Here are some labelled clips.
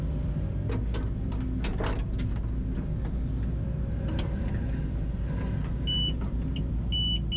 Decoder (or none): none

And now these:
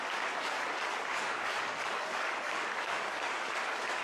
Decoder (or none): codec, DAC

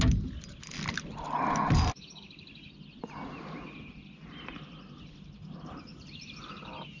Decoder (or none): none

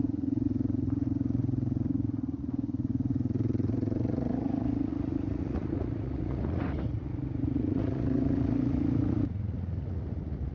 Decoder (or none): vocoder, Vocos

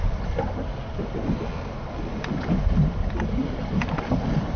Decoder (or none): none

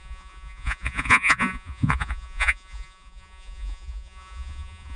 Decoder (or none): vocoder, Vocos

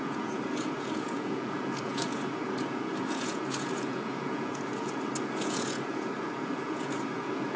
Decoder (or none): vocoder, Vocos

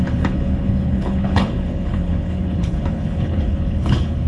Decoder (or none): codec, HILCodec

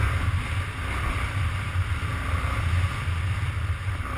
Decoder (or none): none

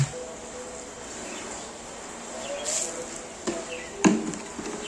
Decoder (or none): none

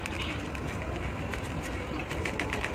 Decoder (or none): vocoder, BigVGAN v2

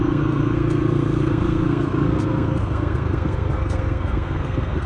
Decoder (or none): codec, SNAC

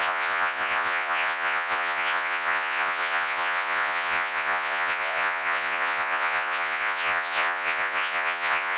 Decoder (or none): vocoder, Vocos